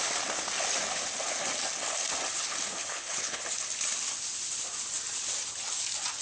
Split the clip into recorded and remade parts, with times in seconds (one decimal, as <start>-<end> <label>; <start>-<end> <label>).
0.0-2.8 recorded; 2.8-3.4 remade; 3.4-6.2 recorded